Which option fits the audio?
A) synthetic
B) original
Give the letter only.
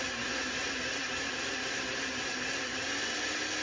B